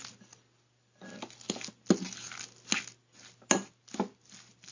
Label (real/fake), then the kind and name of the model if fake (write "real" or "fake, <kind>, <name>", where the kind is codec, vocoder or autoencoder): real